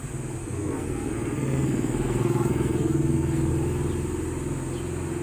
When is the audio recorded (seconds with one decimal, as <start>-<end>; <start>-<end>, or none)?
0.0-0.4; 3.5-5.2